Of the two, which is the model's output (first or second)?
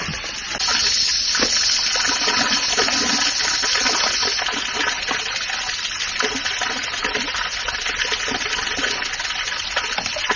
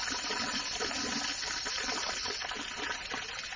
second